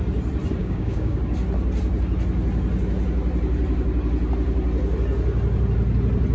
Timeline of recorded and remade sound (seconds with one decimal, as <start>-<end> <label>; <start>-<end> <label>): 0.0-0.6 recorded; 0.6-1.2 remade; 1.2-6.3 recorded